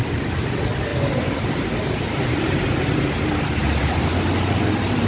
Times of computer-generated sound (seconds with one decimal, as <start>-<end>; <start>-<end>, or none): 0.9-4.0